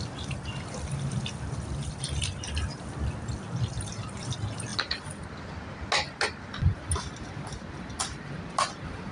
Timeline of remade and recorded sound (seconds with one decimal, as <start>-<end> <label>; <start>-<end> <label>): 0.0-9.1 recorded